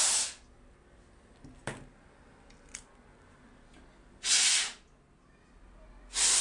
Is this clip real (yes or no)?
yes